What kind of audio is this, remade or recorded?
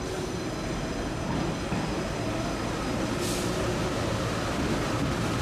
recorded